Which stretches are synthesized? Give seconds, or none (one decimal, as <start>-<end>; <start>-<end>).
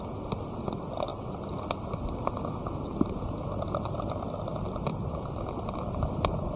none